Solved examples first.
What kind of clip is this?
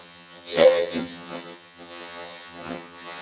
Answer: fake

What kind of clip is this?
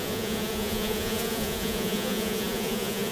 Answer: fake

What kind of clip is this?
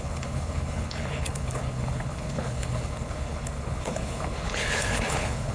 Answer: fake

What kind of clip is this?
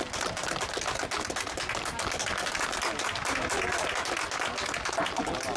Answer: real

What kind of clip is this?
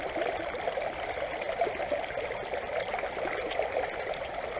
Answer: real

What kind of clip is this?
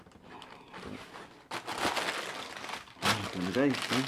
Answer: real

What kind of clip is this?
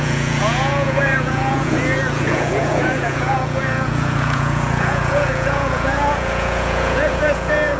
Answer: fake